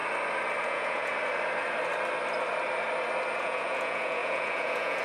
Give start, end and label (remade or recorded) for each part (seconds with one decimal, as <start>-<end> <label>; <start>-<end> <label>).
0.0-0.6 recorded; 0.6-1.1 remade; 1.1-3.4 recorded; 3.4-5.0 remade